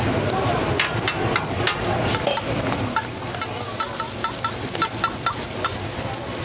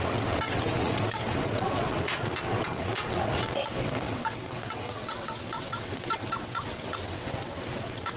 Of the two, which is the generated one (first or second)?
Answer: second